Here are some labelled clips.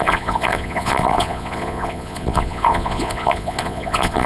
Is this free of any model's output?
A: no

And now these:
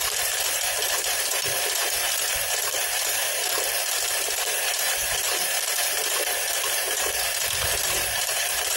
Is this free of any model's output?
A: no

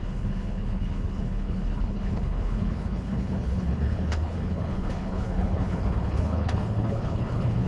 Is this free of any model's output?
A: no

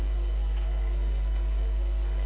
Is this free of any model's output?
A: no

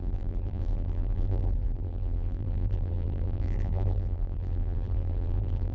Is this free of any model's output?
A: no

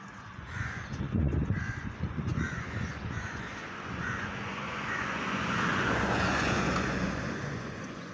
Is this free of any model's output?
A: no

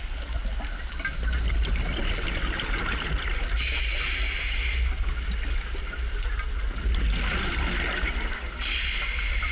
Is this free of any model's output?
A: yes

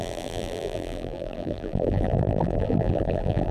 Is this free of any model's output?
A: no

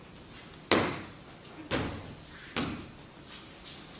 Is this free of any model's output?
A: yes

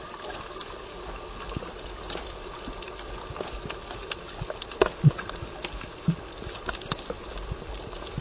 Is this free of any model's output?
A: yes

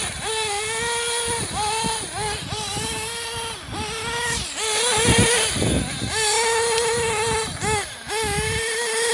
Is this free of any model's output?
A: yes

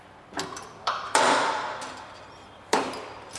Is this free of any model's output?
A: no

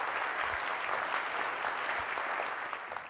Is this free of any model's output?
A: yes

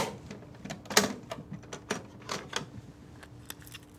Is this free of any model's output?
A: yes